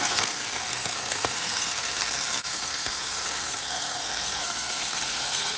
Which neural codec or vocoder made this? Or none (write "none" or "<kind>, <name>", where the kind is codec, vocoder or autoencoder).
codec, SNAC